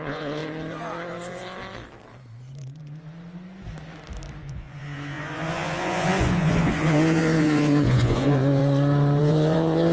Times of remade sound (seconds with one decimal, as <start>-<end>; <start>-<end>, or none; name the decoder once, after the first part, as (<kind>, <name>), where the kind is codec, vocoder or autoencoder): 0.0-0.4 (vocoder, Vocos); 4.4-8.6; 9.2-9.9